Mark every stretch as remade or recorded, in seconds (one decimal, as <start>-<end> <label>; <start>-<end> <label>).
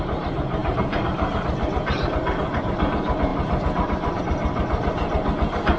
0.0-5.8 remade